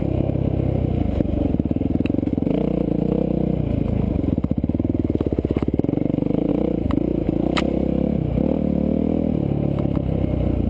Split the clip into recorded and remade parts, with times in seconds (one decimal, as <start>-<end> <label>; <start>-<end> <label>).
0.0-7.1 recorded; 7.1-7.6 remade; 7.6-10.7 recorded